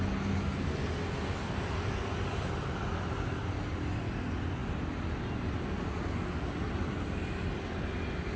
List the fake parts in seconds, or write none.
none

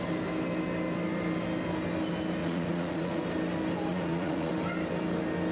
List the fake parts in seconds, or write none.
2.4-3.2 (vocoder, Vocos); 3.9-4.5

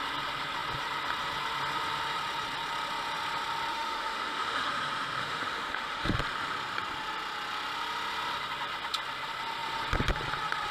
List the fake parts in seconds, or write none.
3.7-4.7 (autoencoder, DAC-VAE); 5.2-6.2